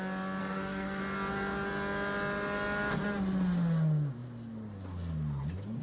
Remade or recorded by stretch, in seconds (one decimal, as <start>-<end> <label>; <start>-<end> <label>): 0.0-0.4 recorded; 0.4-1.0 remade; 1.0-5.8 recorded

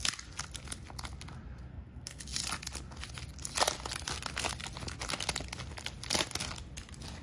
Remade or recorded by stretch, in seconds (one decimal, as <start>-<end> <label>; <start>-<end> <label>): 0.0-1.7 recorded; 1.7-2.2 remade; 2.2-7.2 recorded

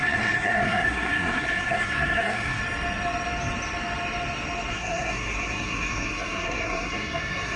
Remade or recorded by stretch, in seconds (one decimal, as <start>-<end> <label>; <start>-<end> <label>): 0.0-2.6 remade; 2.6-4.7 recorded; 4.7-7.6 remade

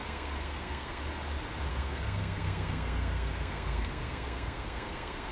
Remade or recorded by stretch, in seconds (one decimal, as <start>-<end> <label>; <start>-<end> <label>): 0.0-1.0 remade; 1.0-1.7 recorded; 1.7-5.3 remade